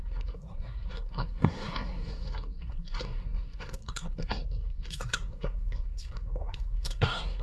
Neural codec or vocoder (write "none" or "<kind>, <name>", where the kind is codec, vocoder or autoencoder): codec, SNAC